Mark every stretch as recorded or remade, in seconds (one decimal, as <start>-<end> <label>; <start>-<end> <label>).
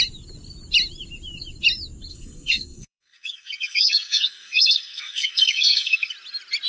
0.0-2.1 recorded; 2.1-6.1 remade; 6.1-6.7 recorded